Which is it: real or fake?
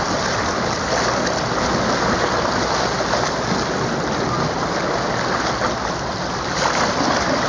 real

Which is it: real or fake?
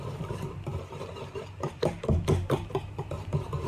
fake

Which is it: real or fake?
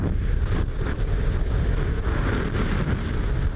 real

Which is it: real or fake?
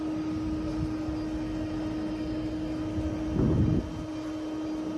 real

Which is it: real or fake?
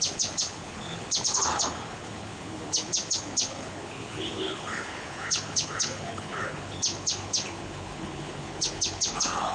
fake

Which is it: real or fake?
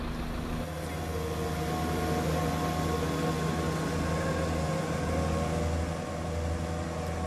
real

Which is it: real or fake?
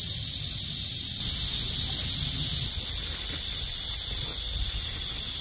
real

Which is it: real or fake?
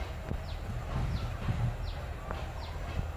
real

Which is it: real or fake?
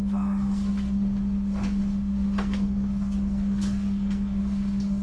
fake